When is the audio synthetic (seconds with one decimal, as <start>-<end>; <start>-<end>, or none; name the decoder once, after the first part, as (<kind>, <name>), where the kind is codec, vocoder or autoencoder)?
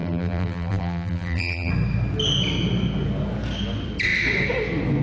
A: 0.0-1.7 (vocoder, BigVGAN v2)